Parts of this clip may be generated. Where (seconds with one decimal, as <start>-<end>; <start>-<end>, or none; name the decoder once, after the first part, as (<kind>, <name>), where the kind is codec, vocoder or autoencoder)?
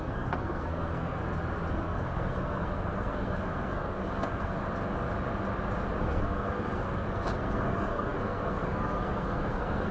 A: 0.0-1.2 (codec, SNAC); 1.7-4.6; 6.0-9.9